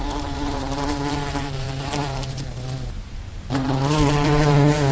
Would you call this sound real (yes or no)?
no